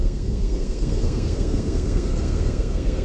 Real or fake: fake